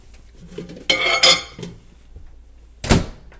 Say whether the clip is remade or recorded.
recorded